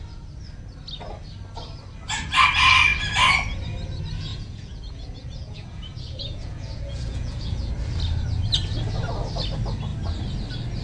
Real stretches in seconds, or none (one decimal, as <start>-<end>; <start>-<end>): 0.0-4.3; 7.7-10.8